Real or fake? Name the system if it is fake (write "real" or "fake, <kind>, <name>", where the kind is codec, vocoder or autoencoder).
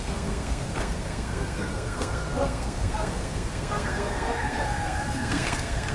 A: fake, codec, SNAC